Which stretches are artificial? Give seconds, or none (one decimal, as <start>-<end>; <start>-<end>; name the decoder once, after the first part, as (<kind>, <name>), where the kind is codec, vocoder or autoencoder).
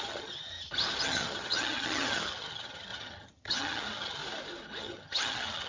0.0-0.5 (vocoder, HiFi-GAN); 1.0-4.2; 4.8-5.7